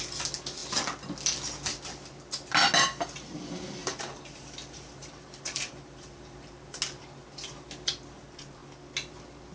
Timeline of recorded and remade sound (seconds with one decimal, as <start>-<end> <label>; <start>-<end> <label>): 0.0-3.8 recorded; 3.8-6.8 remade; 6.8-9.5 recorded